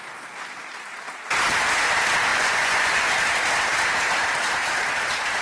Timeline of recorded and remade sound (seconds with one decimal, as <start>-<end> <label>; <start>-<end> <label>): 0.0-2.3 recorded; 2.3-3.1 remade; 3.1-5.4 recorded